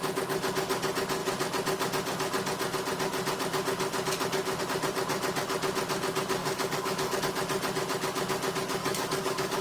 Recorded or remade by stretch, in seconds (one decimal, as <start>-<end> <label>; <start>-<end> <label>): 0.0-6.4 recorded; 6.4-7.2 remade; 7.2-8.8 recorded; 8.8-9.6 remade